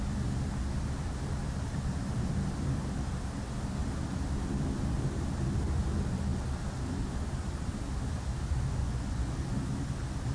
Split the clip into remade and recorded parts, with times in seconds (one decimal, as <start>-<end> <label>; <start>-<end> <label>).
0.0-8.8 recorded; 8.8-9.3 remade; 9.3-10.3 recorded